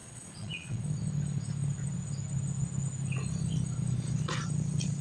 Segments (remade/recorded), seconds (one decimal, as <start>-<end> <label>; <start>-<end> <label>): 0.0-0.8 remade; 0.8-5.0 recorded